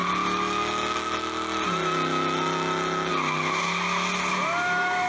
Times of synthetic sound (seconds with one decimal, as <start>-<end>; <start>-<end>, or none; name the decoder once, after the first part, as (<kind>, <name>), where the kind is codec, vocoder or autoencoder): 4.3-5.1 (autoencoder, DAC-VAE)